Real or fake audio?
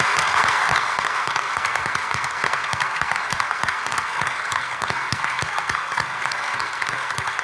fake